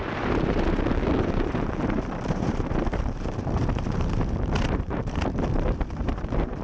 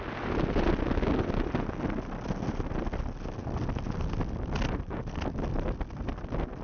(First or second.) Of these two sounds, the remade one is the first